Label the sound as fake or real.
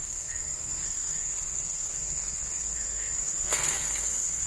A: fake